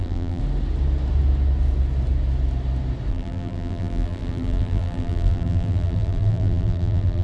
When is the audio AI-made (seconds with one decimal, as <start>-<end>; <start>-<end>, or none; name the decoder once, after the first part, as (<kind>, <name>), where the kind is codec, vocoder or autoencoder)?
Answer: 0.0-0.4 (vocoder, BigVGAN v2); 3.1-7.2